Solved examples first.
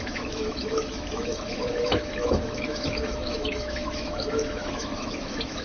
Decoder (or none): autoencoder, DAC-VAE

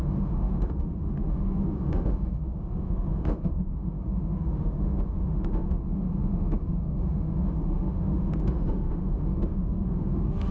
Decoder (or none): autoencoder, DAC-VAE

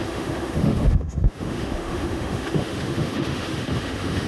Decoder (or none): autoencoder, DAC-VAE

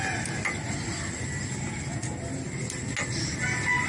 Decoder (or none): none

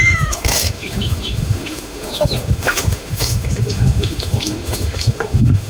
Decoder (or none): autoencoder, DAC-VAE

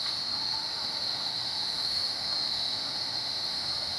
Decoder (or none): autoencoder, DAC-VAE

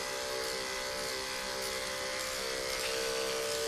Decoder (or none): none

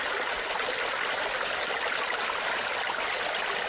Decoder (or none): none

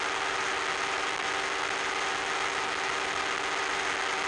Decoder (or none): none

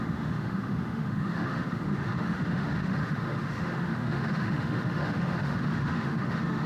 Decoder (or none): autoencoder, DAC-VAE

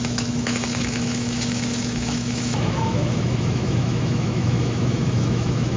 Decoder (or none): autoencoder, DAC-VAE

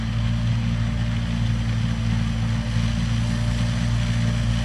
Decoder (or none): none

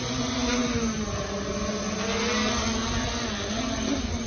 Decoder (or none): none